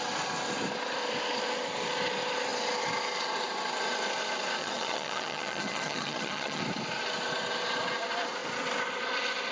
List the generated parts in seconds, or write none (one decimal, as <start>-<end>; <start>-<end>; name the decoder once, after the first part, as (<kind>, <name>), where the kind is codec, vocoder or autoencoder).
4.6-6.6 (vocoder, HiFi-GAN)